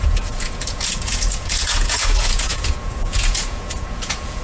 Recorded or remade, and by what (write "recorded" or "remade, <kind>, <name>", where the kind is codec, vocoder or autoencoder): remade, vocoder, Vocos